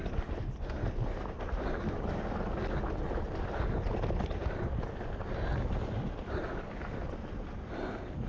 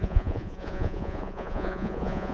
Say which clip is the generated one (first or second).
second